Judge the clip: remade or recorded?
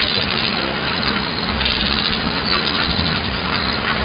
remade